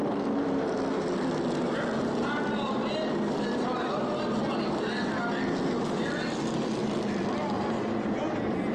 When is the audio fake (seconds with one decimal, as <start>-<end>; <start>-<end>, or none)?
6.8-8.2